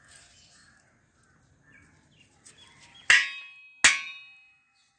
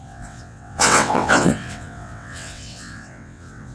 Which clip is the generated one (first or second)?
second